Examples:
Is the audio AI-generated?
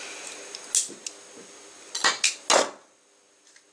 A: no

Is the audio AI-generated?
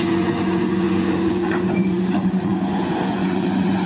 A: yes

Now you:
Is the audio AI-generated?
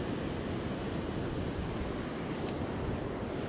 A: no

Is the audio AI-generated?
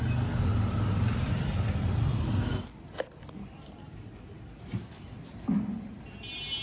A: no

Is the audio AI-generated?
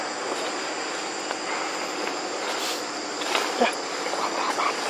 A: no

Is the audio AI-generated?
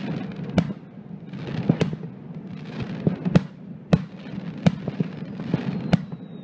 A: no